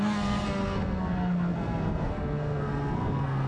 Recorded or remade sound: remade